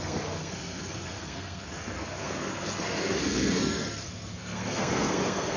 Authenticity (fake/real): fake